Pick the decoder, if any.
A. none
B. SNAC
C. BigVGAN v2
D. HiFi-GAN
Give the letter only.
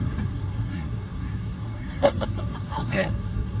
B